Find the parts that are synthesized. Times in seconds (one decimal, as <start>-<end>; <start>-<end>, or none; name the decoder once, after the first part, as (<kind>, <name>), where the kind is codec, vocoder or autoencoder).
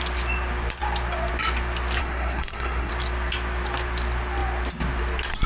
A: 2.0-2.9 (codec, SNAC)